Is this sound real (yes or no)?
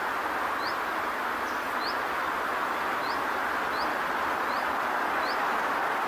no